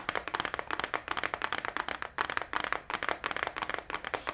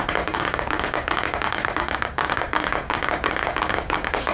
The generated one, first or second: second